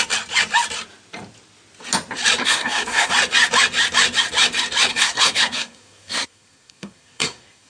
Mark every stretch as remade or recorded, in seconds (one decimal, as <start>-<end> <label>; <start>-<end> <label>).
0.0-2.4 recorded; 2.4-3.1 remade; 3.1-4.9 recorded; 4.9-7.7 remade